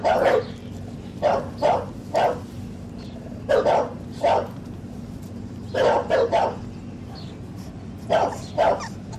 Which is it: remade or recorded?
recorded